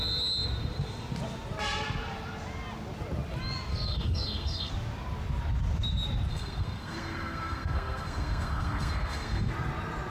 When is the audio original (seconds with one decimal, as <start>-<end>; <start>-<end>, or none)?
0.0-3.7; 4.7-6.3; 9.5-10.1